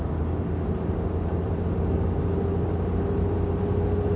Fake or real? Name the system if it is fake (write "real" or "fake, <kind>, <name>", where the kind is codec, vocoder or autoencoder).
real